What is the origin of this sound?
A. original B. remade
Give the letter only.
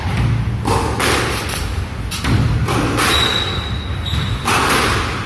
A